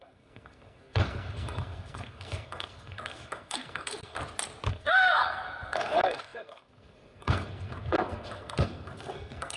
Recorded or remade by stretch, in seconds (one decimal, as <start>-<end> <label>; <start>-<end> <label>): 0.0-4.2 remade; 4.2-4.7 recorded; 4.7-9.6 remade